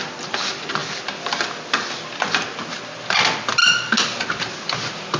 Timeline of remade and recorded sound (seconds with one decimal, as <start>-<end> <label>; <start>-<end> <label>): 0.0-5.2 recorded